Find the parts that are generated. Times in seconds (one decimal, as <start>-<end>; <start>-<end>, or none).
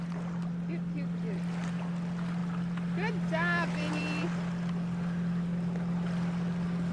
none